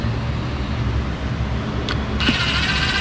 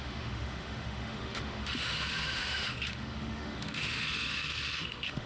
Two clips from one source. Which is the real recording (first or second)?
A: first